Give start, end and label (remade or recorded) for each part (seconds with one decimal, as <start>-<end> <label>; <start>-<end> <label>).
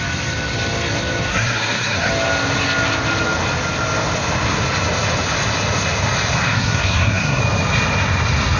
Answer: 0.0-1.3 recorded; 1.3-2.1 remade; 2.1-6.5 recorded; 6.5-7.4 remade; 7.4-8.6 recorded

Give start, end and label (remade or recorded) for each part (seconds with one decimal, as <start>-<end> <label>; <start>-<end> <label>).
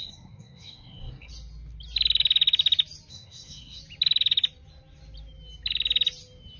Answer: 0.0-1.3 remade; 1.3-3.1 recorded; 3.1-3.8 remade; 3.8-6.6 recorded